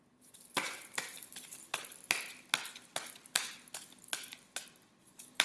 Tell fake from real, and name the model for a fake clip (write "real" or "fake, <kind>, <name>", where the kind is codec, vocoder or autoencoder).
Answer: real